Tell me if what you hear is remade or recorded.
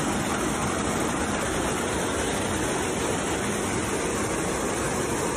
recorded